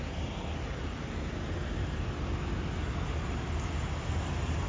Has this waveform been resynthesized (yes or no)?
no